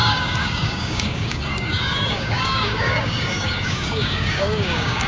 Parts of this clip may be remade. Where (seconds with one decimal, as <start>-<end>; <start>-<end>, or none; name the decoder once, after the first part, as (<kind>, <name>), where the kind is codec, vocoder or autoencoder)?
0.0-5.1 (codec, DAC)

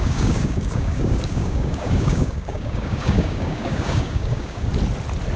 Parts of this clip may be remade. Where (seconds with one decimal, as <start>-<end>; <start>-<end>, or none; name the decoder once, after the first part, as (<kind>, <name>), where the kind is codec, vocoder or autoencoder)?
0.0-4.7 (codec, DAC)

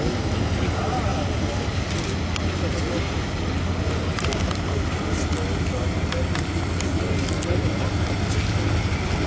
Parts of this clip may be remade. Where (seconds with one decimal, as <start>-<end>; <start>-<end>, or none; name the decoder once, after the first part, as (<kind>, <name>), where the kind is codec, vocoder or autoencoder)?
none

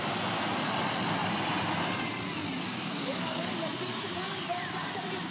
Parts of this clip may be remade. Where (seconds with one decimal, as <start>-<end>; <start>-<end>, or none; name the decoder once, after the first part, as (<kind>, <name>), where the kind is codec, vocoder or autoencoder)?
2.6-3.5 (codec, DAC)

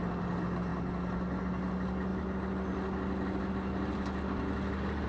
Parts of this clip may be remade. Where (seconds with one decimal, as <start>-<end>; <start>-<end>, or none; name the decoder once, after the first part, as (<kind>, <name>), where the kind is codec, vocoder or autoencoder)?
none

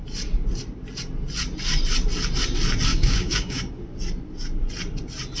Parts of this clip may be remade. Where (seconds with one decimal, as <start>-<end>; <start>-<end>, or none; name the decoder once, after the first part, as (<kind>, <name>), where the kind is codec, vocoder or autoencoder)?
2.9-3.7 (codec, DAC)